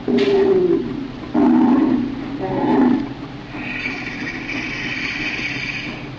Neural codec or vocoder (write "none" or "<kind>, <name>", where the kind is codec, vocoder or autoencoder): none